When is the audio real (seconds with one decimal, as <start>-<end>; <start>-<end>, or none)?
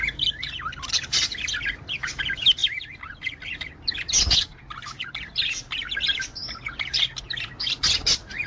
0.0-8.5